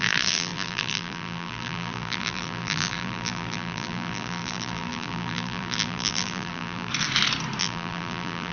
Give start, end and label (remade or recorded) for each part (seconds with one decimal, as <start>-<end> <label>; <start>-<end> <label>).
0.0-6.9 remade; 6.9-7.6 recorded; 7.6-8.5 remade